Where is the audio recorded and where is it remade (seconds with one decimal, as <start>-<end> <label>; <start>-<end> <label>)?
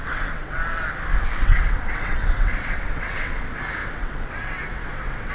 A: 0.0-0.9 remade; 0.9-1.4 recorded; 1.4-3.4 remade; 3.4-3.8 recorded; 3.8-5.3 remade